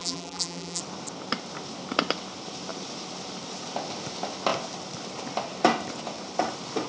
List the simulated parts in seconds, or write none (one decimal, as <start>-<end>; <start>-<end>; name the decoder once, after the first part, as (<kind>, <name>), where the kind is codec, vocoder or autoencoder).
0.0-0.8 (vocoder, BigVGAN v2)